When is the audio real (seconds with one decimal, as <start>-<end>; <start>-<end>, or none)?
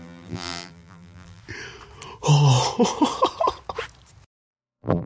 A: 1.4-4.5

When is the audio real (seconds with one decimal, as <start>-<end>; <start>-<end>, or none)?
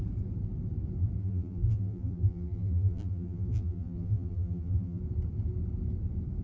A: 0.0-1.2; 5.0-6.4